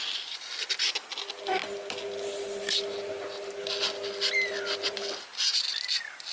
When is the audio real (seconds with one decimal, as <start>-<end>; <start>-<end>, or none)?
0.0-6.3